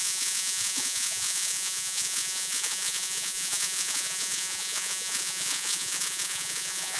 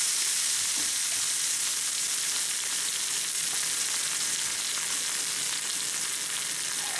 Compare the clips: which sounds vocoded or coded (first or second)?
first